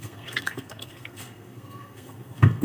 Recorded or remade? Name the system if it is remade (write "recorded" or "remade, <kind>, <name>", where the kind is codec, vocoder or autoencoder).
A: remade, codec, SNAC